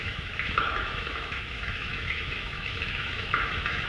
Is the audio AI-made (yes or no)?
yes